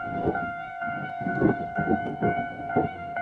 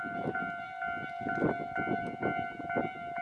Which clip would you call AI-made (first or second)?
first